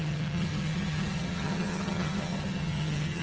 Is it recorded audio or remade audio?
remade